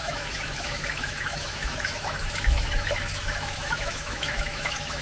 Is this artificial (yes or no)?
yes